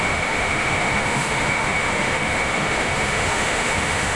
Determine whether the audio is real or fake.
fake